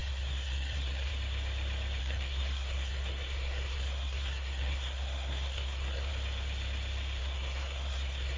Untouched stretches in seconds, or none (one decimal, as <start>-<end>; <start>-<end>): 1.1-2.0; 6.1-7.2